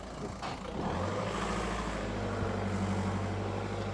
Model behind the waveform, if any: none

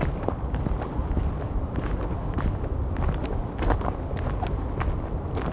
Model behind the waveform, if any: none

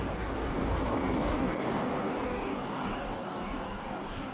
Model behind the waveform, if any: codec, DAC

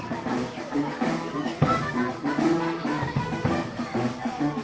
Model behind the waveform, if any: codec, DAC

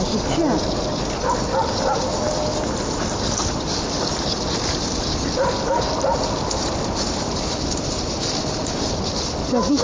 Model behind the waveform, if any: none